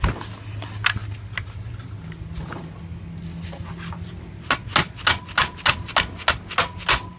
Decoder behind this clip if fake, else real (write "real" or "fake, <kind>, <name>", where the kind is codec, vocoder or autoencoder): real